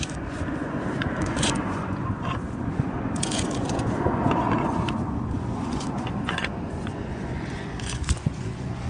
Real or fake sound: fake